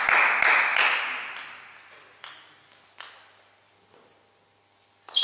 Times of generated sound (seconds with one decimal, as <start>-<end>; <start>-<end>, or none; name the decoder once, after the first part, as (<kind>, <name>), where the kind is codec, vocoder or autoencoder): none